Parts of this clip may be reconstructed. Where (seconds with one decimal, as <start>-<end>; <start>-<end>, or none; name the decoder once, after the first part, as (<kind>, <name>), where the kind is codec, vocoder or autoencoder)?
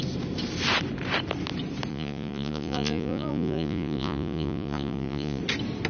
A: 1.9-5.4 (vocoder, Vocos)